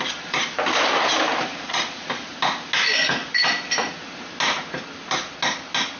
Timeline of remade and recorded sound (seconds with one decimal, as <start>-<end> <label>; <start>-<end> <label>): 0.0-1.5 recorded; 1.5-2.1 remade; 2.1-6.0 recorded